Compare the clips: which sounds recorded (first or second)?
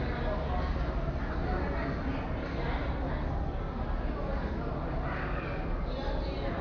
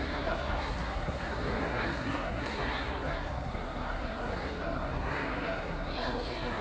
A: first